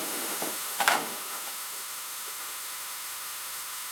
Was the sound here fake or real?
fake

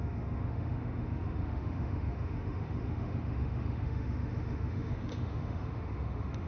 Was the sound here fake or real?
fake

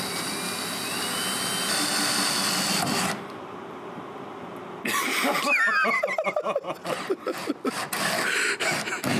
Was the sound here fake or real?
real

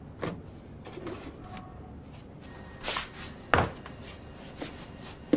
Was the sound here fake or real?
real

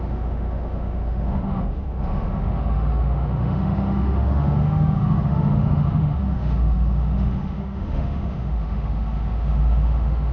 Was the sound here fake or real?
fake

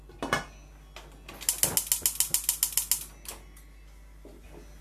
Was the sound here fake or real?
real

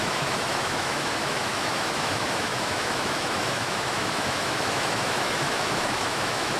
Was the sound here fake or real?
fake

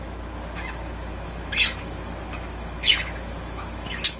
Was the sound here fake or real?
fake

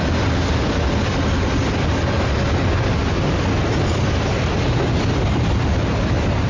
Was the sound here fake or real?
real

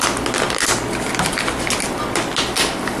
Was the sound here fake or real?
real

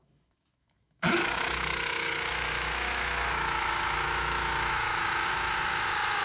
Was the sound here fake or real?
fake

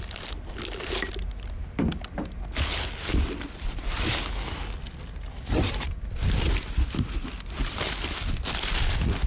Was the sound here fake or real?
real